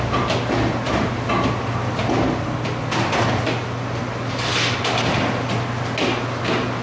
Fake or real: real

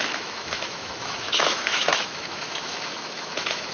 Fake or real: fake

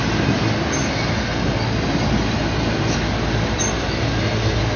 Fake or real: real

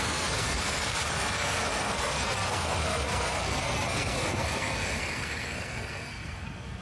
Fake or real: fake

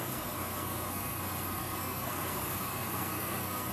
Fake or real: fake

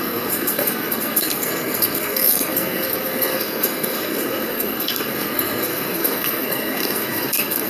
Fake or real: fake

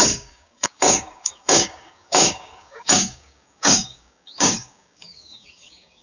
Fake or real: fake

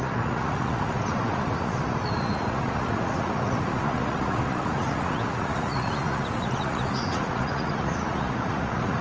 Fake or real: fake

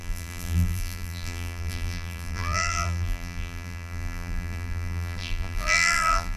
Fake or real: fake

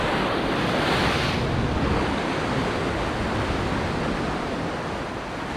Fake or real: real